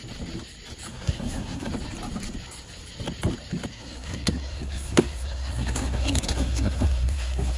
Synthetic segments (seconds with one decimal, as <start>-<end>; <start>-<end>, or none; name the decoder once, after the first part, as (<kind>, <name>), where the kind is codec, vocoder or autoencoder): 0.9-1.7 (codec, SNAC); 3.7-7.6